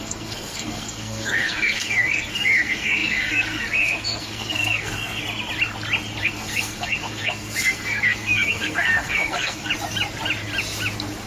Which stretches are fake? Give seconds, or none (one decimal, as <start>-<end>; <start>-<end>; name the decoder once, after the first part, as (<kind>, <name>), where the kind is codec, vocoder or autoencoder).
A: 0.0-5.2 (codec, SNAC); 6.2-9.7